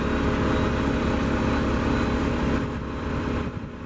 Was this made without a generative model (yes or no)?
yes